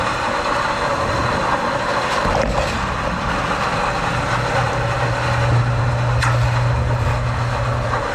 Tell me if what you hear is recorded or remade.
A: recorded